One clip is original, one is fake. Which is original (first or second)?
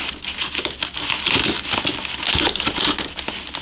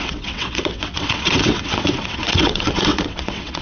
first